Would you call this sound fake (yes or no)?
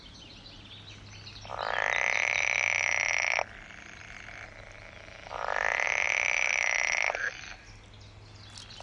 no